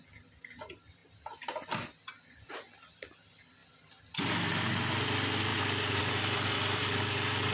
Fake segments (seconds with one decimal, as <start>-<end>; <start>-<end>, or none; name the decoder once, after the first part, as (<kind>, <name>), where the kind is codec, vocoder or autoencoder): none